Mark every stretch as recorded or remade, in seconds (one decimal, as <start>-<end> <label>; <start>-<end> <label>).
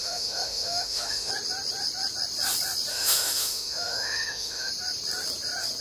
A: 0.0-1.3 remade; 1.3-2.9 recorded; 2.9-4.7 remade; 4.7-5.8 recorded